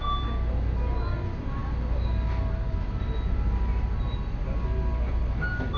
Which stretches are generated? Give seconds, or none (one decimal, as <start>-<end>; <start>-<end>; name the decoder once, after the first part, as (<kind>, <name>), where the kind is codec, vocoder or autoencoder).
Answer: none